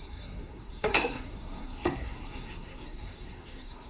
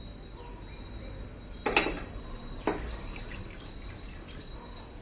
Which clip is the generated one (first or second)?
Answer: first